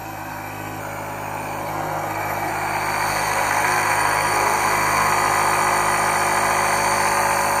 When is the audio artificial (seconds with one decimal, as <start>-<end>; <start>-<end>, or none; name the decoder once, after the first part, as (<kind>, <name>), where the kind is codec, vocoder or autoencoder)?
0.0-0.8 (codec, SNAC); 1.6-2.5; 3.1-5.1